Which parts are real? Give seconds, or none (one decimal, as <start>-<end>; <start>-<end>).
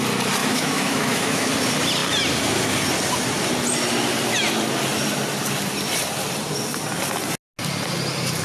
0.0-0.4; 1.5-8.4